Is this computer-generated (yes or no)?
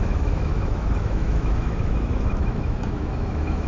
yes